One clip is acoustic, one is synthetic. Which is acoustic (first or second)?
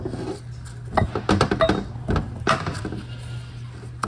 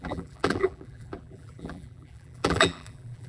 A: first